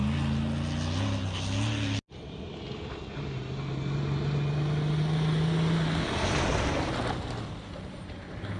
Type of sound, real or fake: real